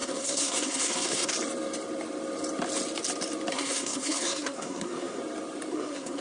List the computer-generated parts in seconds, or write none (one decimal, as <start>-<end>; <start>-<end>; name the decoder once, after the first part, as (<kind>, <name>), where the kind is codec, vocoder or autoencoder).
0.0-1.3 (codec, SNAC); 3.5-5.2; 5.7-6.2